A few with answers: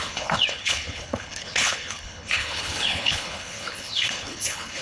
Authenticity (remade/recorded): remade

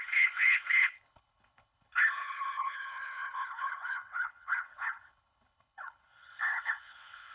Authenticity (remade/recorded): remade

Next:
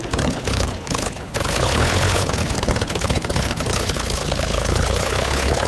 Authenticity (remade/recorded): remade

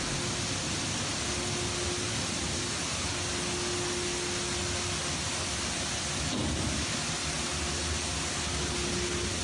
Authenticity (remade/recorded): recorded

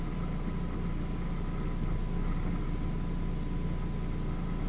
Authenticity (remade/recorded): recorded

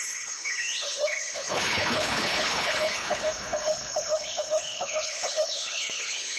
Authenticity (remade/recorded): remade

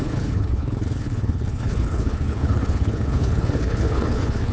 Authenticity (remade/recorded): remade